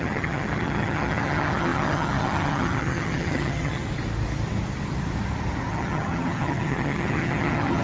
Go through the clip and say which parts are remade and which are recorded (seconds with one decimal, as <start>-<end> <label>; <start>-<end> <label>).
0.0-3.8 remade; 3.8-5.7 recorded; 5.7-7.8 remade